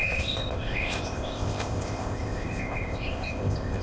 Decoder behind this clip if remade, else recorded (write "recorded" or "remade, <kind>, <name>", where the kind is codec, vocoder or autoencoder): remade, codec, ZipCodec